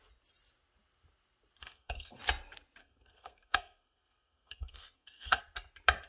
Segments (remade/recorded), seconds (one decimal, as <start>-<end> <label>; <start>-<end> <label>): 0.0-1.6 recorded; 1.6-2.2 remade; 2.2-2.8 recorded; 2.8-5.4 remade; 5.4-6.1 recorded